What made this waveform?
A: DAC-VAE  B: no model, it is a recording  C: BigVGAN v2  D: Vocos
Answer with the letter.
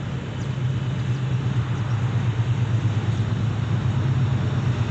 B